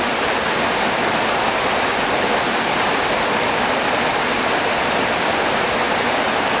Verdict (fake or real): real